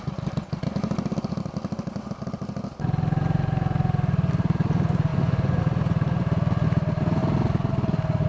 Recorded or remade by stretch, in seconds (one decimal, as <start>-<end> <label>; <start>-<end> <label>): 0.0-5.1 recorded; 5.1-5.6 remade; 5.6-8.3 recorded